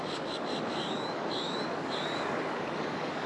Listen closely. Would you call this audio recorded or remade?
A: remade